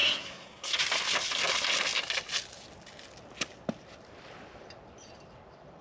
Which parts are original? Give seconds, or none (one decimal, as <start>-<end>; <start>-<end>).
0.8-5.8